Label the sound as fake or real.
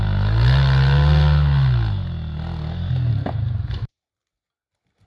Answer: real